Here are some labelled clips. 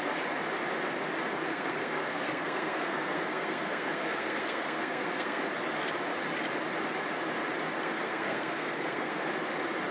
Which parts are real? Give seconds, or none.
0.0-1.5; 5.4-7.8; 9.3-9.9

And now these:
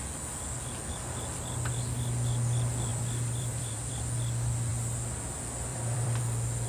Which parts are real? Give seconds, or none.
0.0-2.9; 4.0-5.7; 6.2-6.7

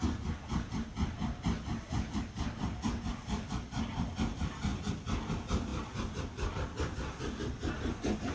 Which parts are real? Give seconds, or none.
0.0-8.3

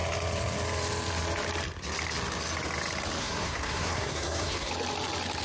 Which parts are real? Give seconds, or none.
0.0-3.2; 4.7-5.4

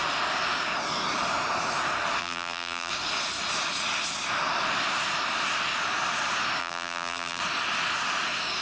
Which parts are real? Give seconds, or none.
0.0-2.2; 2.9-6.6; 7.4-8.6